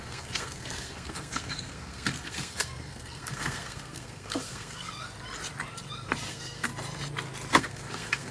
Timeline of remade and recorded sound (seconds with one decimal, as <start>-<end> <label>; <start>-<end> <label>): 0.0-4.9 remade; 4.9-6.3 recorded; 6.3-6.7 remade; 6.7-7.5 recorded; 7.5-8.3 remade

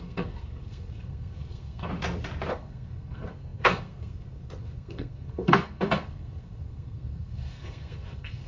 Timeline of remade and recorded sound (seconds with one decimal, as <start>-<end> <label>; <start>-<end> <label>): 0.0-1.9 remade; 1.9-2.5 recorded; 2.5-8.5 remade

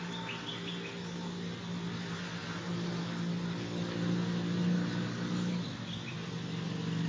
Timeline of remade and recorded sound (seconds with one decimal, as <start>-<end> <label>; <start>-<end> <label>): 0.0-7.1 recorded

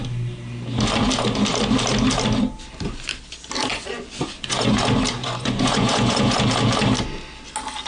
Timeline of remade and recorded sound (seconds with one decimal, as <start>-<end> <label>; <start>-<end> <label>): 0.0-3.7 recorded; 3.7-4.8 remade; 4.8-5.2 recorded; 5.2-6.4 remade; 6.4-7.9 recorded

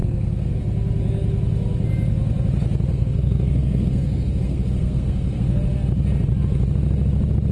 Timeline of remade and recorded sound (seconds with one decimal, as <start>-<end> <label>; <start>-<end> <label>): 0.0-0.6 remade; 0.6-2.9 recorded; 2.9-5.6 remade; 5.6-7.5 recorded

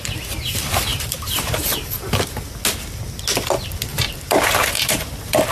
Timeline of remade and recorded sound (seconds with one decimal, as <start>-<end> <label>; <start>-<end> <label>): 0.0-0.9 recorded; 0.9-2.6 remade; 2.6-3.9 recorded; 3.9-5.5 remade

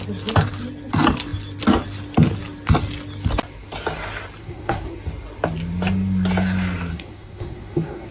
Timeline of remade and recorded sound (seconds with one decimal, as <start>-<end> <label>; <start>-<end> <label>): 0.0-4.4 recorded; 4.4-4.9 remade; 4.9-6.9 recorded; 6.9-8.1 remade